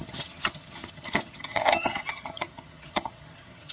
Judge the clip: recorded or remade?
remade